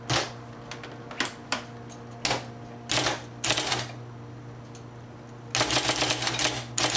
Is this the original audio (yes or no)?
yes